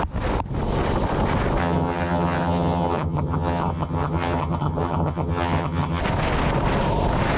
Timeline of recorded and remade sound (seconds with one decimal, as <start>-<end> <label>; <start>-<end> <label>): 0.0-1.6 recorded; 1.6-6.0 remade; 6.0-7.4 recorded